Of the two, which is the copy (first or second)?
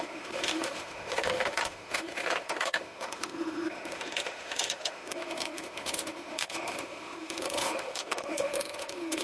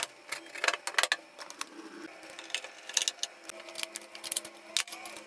first